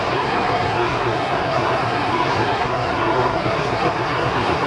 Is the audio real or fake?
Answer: fake